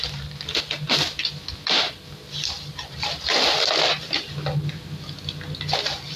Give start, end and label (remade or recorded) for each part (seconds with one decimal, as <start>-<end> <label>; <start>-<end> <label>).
0.0-6.2 recorded

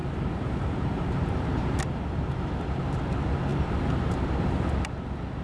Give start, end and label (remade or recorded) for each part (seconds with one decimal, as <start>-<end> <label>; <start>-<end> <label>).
0.0-1.6 remade; 1.6-3.5 recorded; 3.5-4.3 remade; 4.3-5.4 recorded